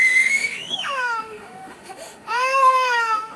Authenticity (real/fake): fake